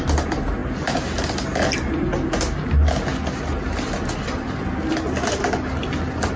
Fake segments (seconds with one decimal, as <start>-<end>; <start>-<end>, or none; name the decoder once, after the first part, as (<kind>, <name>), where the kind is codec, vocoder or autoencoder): none